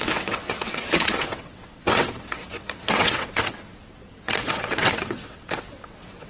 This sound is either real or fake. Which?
fake